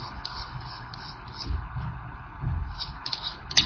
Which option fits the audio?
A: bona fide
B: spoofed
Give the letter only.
B